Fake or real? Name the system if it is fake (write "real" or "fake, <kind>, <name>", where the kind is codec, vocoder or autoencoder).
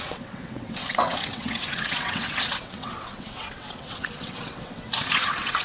fake, vocoder, WaveNeXt